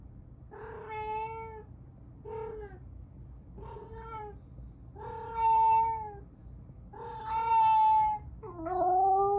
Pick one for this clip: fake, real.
real